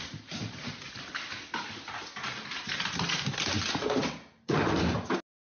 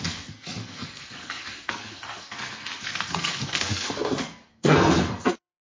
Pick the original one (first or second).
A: first